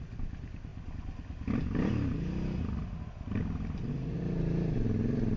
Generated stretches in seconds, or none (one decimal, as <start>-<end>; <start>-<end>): none

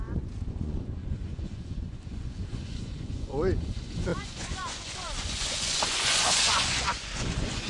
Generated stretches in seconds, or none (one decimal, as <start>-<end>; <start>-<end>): 0.0-7.7